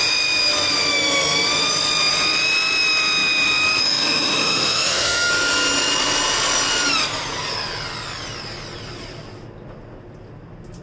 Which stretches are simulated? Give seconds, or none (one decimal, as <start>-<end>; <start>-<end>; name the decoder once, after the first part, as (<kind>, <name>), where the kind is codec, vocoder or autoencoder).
3.8-5.3 (autoencoder, DAC-VAE)